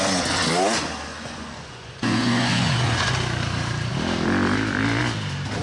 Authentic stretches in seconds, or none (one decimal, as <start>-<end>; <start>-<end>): 0.0-1.1; 3.1-5.6